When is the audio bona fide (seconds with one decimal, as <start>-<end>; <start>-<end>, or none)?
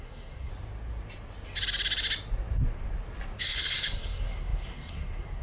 0.5-3.4